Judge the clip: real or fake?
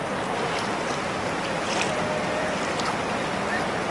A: real